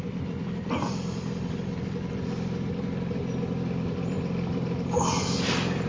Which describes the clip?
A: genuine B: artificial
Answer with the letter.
B